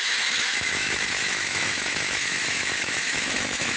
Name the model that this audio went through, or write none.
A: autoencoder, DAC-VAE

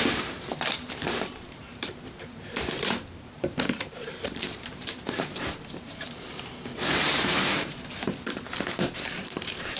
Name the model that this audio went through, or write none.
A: vocoder, BigVGAN v2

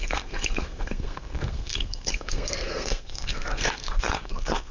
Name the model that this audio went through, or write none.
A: codec, SNAC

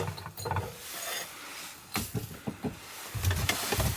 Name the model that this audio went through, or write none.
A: none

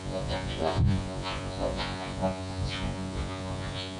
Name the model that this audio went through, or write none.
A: vocoder, Vocos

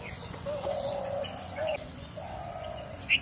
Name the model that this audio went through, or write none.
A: vocoder, Vocos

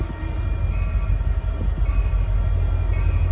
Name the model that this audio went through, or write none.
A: none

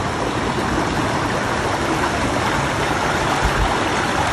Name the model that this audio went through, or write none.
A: none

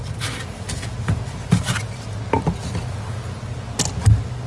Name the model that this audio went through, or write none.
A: none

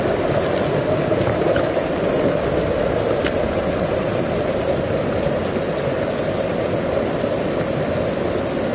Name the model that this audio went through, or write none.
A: none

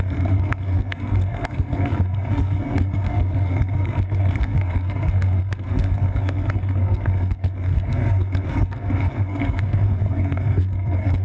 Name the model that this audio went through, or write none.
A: codec, SNAC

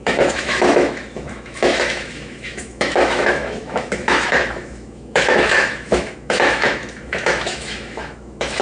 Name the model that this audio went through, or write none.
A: autoencoder, DAC-VAE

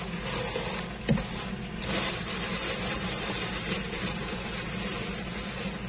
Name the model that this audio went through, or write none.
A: none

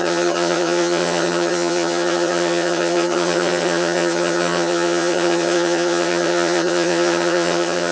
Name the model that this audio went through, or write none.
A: vocoder, HiFi-GAN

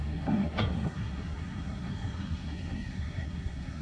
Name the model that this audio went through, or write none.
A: codec, SNAC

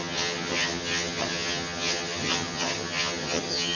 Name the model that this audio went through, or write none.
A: vocoder, HiFi-GAN